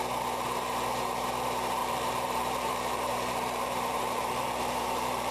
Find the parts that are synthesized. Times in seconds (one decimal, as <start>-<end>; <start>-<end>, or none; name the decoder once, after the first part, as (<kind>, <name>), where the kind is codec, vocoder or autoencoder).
1.8-5.3 (vocoder, BigVGAN v2)